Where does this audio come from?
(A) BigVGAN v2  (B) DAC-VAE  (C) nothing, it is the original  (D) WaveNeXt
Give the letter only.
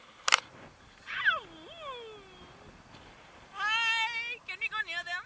C